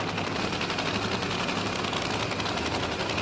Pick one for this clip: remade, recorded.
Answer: recorded